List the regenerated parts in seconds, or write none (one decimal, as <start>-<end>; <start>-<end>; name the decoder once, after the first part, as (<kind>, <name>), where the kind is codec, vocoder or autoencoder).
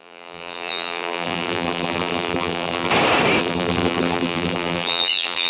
0.0-2.9 (vocoder, BigVGAN v2); 3.4-5.5